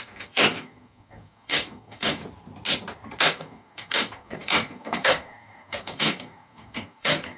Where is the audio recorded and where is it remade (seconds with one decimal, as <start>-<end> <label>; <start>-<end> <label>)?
0.0-2.2 remade; 2.2-3.2 recorded; 3.2-7.4 remade

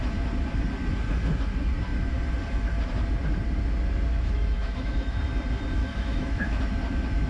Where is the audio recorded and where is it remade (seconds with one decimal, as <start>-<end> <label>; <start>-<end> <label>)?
0.0-4.1 recorded; 4.1-5.2 remade; 5.2-5.8 recorded; 5.8-6.6 remade; 6.6-7.3 recorded

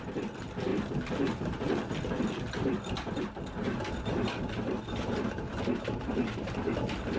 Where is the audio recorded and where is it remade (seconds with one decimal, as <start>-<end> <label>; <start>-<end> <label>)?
0.0-7.2 remade

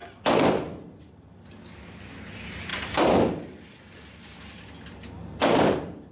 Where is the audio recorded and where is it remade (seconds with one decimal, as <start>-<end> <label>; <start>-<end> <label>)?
0.0-6.1 recorded

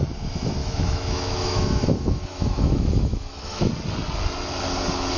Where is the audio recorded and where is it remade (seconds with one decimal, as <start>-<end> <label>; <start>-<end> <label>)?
0.0-0.6 recorded; 0.6-3.7 remade; 3.7-5.2 recorded